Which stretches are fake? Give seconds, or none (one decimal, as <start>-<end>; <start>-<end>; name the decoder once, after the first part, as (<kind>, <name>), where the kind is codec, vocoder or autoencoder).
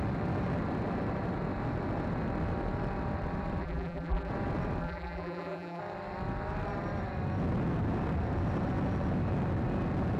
3.6-4.3 (vocoder, BigVGAN v2); 4.8-5.8